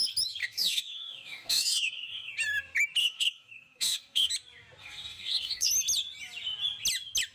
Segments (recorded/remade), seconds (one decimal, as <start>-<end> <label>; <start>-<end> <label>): 0.0-0.4 recorded; 0.4-2.3 remade; 2.3-3.0 recorded; 3.0-4.3 remade; 4.3-4.8 recorded; 4.8-5.7 remade; 5.7-7.3 recorded